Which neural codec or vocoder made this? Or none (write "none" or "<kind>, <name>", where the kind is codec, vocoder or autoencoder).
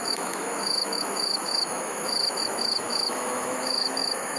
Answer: autoencoder, DAC-VAE